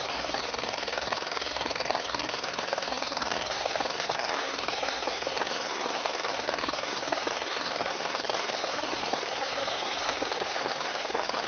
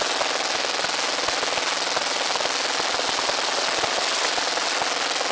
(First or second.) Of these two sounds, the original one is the second